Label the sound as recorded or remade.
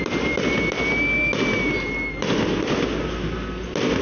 recorded